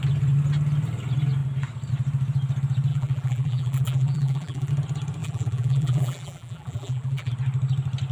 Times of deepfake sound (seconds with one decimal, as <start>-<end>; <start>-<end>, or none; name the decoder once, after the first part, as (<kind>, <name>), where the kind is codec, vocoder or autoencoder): 2.9-4.7 (vocoder, BigVGAN v2); 5.2-7.3